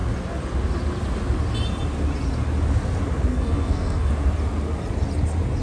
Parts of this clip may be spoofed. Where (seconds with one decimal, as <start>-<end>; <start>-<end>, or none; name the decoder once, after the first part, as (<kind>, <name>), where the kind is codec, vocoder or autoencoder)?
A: 3.3-4.1 (codec, SNAC)